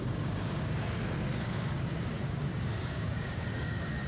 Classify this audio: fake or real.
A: fake